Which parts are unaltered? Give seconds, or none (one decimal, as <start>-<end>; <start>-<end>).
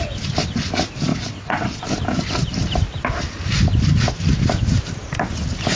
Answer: 0.0-1.1; 1.8-5.8